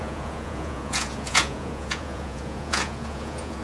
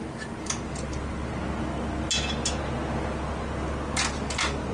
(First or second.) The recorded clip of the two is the second